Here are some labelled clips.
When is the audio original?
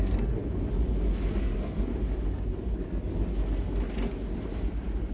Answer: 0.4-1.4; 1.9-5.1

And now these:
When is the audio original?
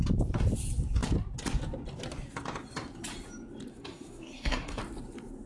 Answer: 0.0-3.7; 4.8-5.5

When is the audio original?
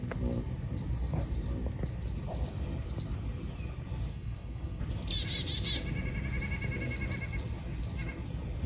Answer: 0.0-4.1; 4.8-8.7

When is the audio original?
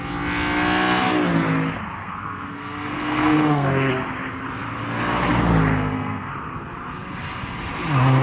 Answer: 0.0-2.0; 3.9-5.7; 6.3-8.2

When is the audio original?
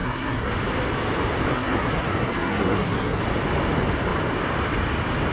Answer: 0.5-1.5; 3.2-5.3